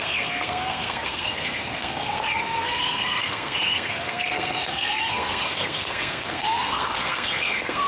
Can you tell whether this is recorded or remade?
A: remade